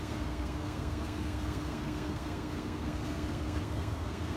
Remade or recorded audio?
remade